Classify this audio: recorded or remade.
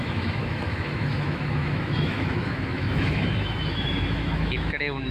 remade